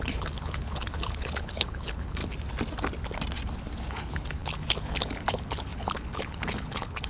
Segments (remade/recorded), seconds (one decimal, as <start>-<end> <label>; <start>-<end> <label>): 0.0-2.2 remade; 2.2-3.9 recorded; 3.9-7.1 remade